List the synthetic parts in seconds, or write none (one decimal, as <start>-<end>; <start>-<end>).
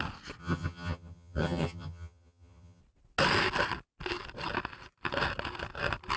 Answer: 0.4-2.8